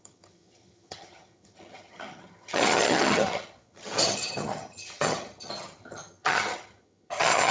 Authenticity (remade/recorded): remade